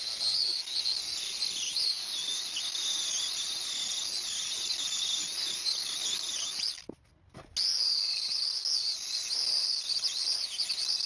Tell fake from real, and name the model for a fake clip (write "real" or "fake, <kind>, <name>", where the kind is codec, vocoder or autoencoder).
real